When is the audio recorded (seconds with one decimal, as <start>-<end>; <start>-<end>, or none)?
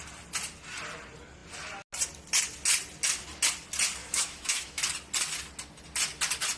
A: 0.0-4.0; 4.8-6.6